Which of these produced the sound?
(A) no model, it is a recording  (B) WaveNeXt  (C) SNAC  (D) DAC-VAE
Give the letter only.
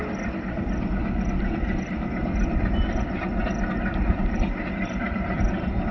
A